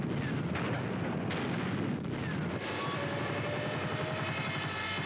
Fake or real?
real